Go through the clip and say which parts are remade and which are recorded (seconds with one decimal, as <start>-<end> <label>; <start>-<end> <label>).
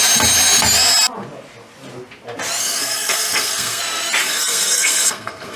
0.0-2.6 recorded; 2.6-3.8 remade; 3.8-4.2 recorded; 4.2-5.6 remade